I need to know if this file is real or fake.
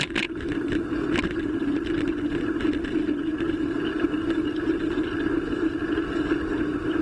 real